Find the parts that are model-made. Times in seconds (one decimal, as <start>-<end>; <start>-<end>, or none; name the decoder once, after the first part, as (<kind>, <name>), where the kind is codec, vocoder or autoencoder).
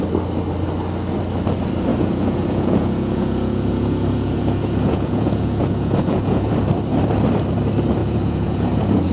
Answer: 1.9-6.5 (vocoder, Vocos); 8.0-9.1